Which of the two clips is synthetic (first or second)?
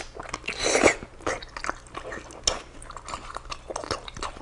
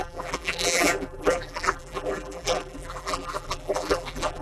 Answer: second